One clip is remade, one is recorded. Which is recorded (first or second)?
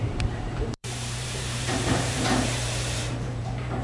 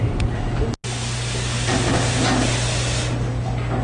second